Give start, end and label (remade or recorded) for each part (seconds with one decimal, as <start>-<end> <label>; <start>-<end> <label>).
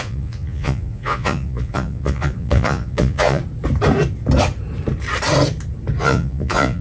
0.0-3.4 remade; 3.4-6.0 recorded; 6.0-6.8 remade